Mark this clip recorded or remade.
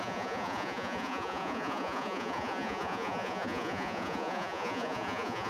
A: remade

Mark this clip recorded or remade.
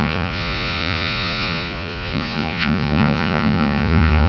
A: remade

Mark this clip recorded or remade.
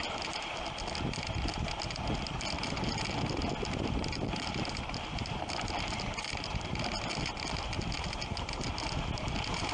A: recorded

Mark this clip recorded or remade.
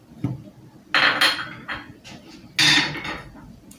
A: recorded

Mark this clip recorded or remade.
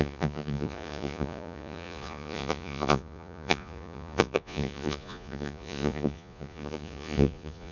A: remade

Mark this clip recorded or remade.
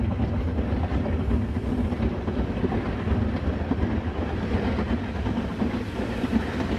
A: recorded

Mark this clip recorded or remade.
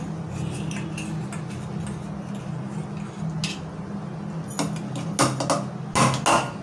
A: recorded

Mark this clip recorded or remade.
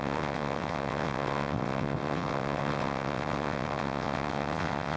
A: remade